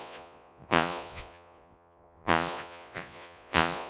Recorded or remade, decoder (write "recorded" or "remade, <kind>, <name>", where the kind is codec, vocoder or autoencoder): remade, vocoder, Vocos